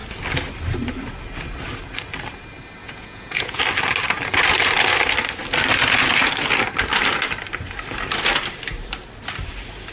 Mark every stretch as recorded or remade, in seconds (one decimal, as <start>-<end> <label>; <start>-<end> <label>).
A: 0.0-2.8 recorded; 2.8-3.6 remade; 3.6-9.9 recorded